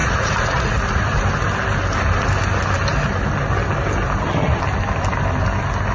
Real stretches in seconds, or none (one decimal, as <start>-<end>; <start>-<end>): 1.2-5.9